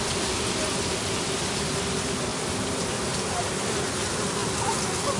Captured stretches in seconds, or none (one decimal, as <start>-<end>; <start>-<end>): 0.0-5.2